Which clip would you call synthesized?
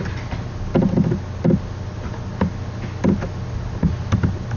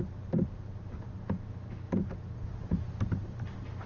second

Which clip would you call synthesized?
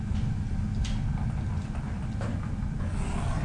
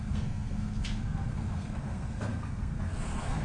second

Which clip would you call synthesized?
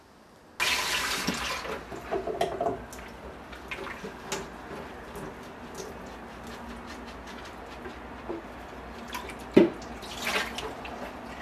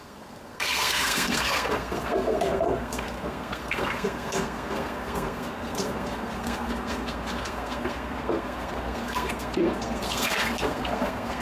second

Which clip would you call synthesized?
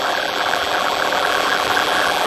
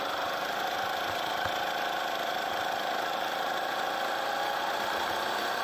first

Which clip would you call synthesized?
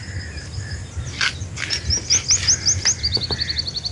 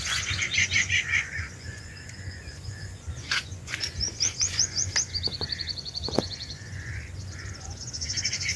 second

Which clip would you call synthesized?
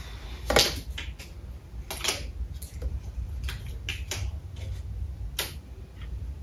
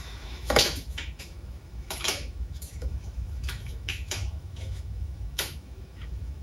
second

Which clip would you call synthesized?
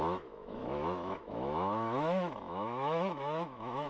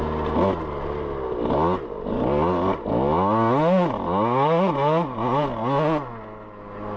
first